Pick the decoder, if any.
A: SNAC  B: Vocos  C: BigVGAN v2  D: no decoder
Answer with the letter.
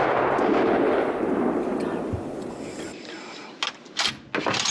D